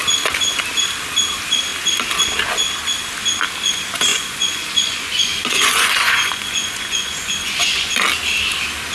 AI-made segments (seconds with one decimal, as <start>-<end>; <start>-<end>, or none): 4.1-7.9